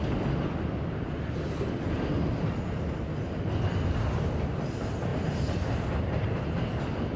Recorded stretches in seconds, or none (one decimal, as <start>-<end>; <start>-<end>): 0.0-5.1; 6.8-7.2